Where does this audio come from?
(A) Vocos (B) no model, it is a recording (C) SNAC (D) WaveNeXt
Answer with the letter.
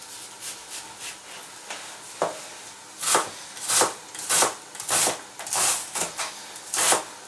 B